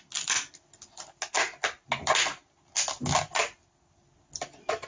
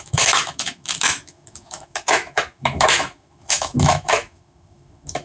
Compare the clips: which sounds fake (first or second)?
second